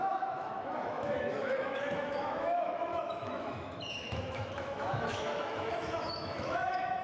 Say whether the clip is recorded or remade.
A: remade